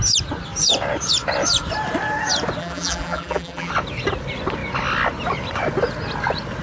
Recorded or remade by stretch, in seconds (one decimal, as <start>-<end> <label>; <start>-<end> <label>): 0.0-2.6 recorded; 2.6-3.7 remade; 3.7-6.6 recorded